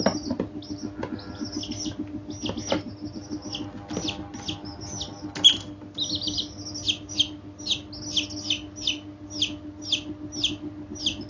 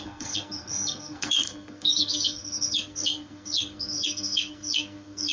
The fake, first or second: second